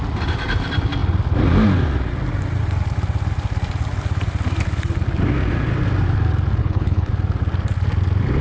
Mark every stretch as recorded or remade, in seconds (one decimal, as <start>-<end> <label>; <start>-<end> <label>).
0.0-6.6 recorded; 6.6-7.1 remade; 7.1-8.4 recorded